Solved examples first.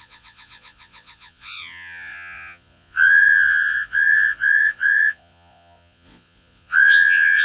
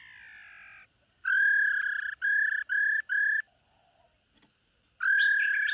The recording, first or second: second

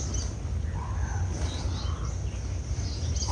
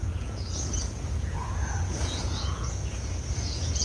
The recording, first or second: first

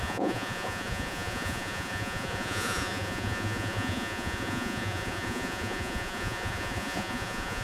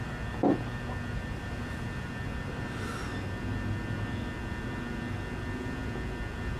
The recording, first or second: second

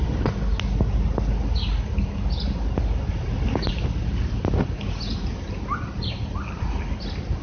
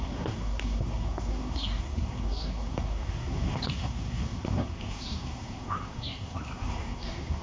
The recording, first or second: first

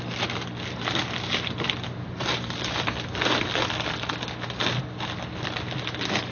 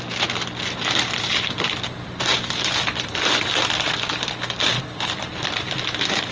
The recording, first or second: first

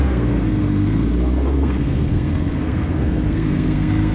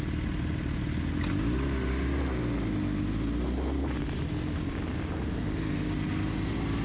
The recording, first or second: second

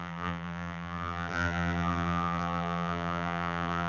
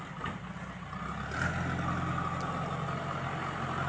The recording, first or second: second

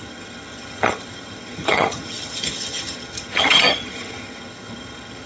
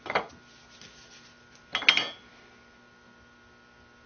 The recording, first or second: second